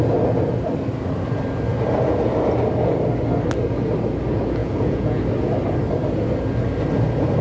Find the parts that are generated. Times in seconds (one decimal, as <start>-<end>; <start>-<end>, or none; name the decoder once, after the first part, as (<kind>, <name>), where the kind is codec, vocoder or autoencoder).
4.6-5.2 (vocoder, Vocos)